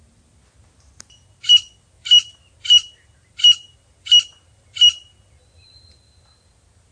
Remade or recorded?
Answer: recorded